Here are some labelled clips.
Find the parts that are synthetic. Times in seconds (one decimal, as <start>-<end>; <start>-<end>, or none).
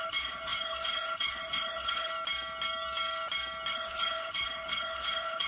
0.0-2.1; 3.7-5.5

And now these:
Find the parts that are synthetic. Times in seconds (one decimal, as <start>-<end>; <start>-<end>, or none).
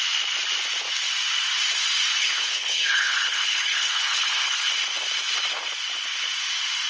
2.2-4.7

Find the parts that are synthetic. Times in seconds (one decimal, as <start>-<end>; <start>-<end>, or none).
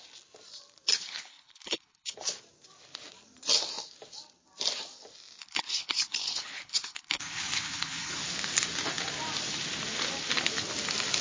0.9-2.1; 5.4-8.1